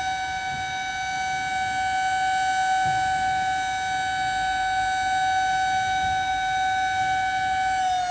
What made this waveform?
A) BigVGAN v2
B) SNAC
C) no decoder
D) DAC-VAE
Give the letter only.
C